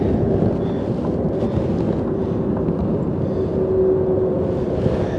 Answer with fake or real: real